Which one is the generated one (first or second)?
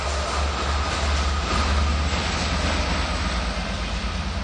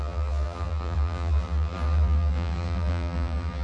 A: second